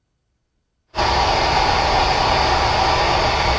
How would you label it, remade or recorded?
recorded